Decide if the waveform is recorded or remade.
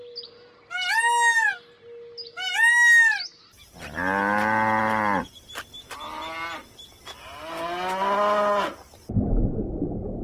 recorded